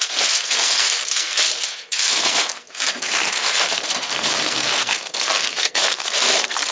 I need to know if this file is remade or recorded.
remade